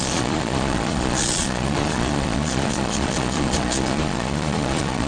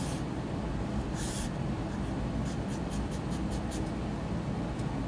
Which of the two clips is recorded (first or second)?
second